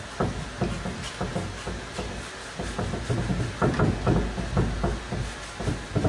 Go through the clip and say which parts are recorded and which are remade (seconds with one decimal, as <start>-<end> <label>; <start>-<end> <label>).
0.0-6.1 recorded